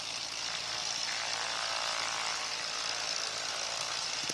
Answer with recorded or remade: recorded